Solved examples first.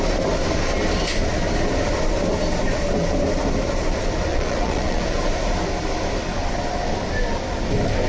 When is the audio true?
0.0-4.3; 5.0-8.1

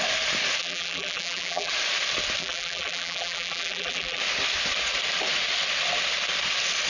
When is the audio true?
0.0-0.6; 1.7-2.4; 4.2-6.9

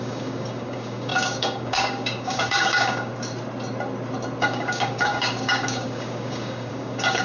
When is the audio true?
3.1-4.4

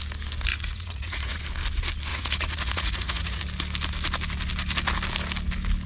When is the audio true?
0.0-0.5; 1.4-2.1; 3.4-5.9